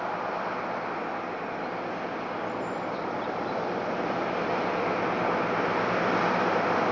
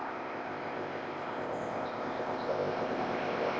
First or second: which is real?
first